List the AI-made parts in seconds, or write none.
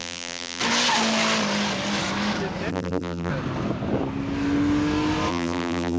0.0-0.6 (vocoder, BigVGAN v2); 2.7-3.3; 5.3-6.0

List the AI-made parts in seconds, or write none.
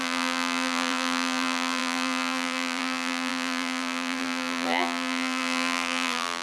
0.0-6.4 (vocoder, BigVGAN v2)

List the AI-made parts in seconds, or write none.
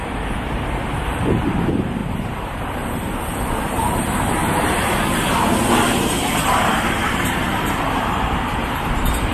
0.0-9.3 (vocoder, BigVGAN v2)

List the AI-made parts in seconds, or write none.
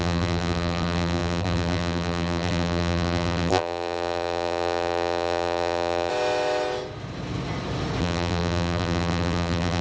0.0-6.1 (vocoder, BigVGAN v2); 8.0-9.8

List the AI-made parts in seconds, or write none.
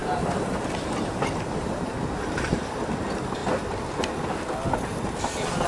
0.0-2.6 (vocoder, BigVGAN v2)